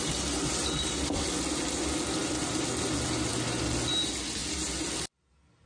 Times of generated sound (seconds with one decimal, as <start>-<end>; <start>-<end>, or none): none